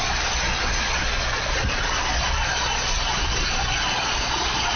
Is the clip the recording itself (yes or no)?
yes